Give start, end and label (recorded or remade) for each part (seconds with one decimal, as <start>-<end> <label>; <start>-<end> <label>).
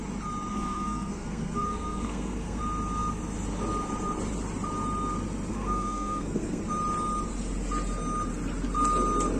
0.0-0.5 recorded; 0.5-2.6 remade; 2.6-5.5 recorded; 5.5-6.6 remade; 6.6-9.4 recorded